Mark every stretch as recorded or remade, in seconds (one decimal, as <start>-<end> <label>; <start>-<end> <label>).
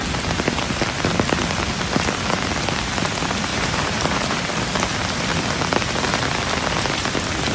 0.0-0.8 remade; 0.8-3.5 recorded; 3.5-4.5 remade; 4.5-7.5 recorded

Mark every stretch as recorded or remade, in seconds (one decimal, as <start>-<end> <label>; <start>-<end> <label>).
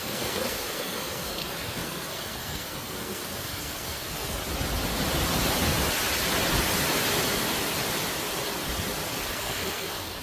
0.0-4.4 remade; 4.4-9.3 recorded; 9.3-10.2 remade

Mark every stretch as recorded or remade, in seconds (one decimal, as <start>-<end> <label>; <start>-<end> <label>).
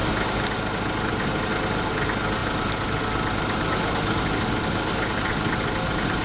0.0-6.2 recorded